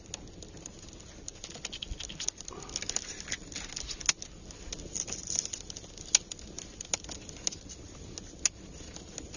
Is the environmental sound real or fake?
real